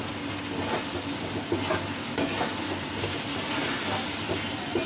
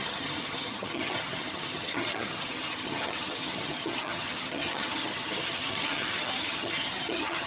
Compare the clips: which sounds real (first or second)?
first